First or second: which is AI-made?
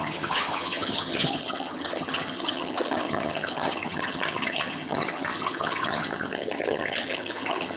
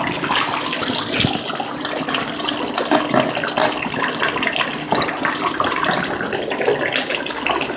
first